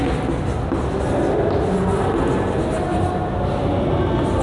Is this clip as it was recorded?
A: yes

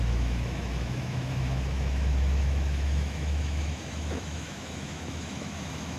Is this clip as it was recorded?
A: no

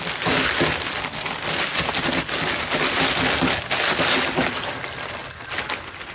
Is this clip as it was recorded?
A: yes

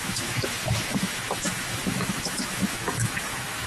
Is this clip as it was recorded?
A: no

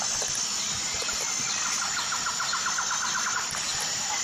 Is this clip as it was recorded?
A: yes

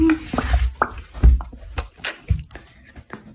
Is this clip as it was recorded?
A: yes